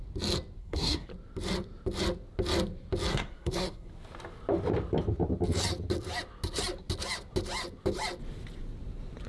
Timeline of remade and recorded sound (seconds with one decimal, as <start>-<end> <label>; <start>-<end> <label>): 0.0-0.6 recorded; 0.6-1.1 remade; 1.1-3.1 recorded; 3.1-3.9 remade; 3.9-9.3 recorded